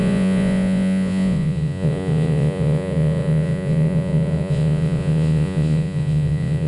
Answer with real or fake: fake